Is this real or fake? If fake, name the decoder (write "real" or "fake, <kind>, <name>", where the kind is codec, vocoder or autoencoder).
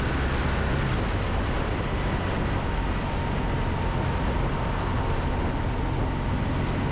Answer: real